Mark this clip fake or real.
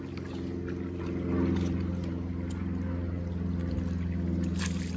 real